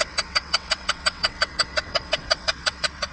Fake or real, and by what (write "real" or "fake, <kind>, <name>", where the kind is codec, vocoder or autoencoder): fake, vocoder, WaveNeXt